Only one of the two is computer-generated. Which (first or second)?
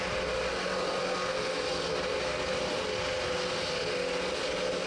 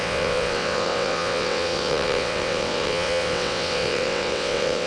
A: second